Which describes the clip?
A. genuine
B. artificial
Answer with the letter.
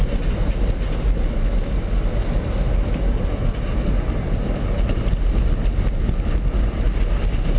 A